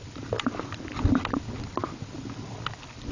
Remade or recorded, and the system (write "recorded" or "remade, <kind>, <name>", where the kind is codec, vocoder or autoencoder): recorded